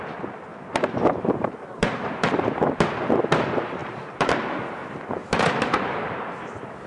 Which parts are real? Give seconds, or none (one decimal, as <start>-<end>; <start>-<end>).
0.0-0.5; 2.3-3.8; 4.3-5.2; 6.5-6.9